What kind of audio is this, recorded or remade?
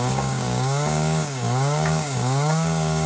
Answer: remade